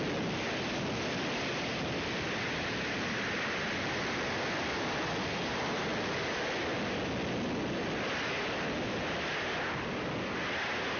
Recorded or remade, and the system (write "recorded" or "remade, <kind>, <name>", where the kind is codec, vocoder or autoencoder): recorded